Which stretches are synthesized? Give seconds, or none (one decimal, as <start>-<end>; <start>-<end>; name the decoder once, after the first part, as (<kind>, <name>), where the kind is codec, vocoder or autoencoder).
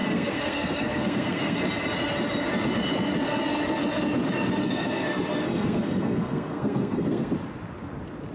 0.0-1.6 (codec, SNAC); 4.6-7.3